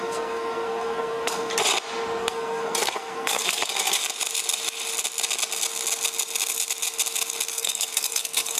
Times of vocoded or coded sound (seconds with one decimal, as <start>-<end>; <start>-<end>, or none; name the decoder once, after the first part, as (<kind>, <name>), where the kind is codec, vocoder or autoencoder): 0.0-1.5 (codec, SNAC); 2.2-4.0; 7.5-8.6